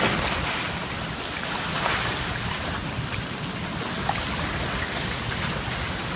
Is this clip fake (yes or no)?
no